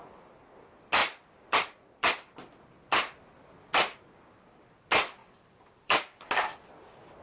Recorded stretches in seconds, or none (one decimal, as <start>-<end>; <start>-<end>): 0.0-5.2; 6.3-7.2